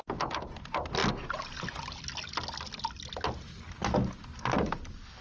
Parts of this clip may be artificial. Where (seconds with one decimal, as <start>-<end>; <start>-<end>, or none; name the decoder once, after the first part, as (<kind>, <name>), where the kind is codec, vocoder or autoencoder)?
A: none